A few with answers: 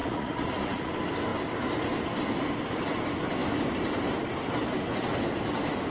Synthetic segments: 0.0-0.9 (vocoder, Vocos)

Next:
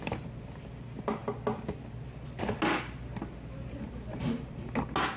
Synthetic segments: none

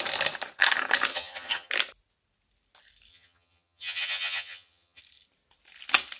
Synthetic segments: 1.1-1.7 (vocoder, HiFi-GAN); 3.1-5.0

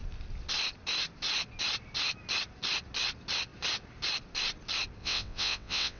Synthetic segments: 5.0-6.0 (vocoder, WaveNeXt)

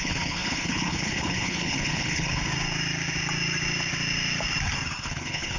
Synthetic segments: 0.0-2.4 (codec, HILCodec); 5.0-5.6

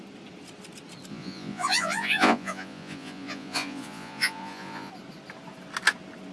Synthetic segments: 1.1-4.9 (vocoder, Vocos)

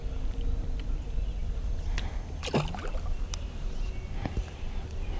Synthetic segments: none